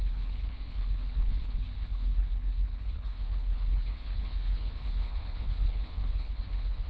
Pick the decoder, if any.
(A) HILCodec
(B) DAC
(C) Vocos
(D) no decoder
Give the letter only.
A